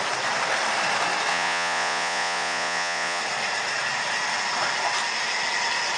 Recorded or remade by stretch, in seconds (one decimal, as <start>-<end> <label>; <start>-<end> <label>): 0.0-1.3 recorded; 1.3-3.2 remade; 3.2-6.0 recorded